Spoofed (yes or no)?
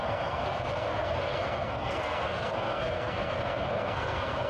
yes